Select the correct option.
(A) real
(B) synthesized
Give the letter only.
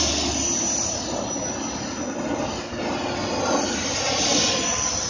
A